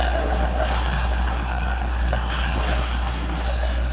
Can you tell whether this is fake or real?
fake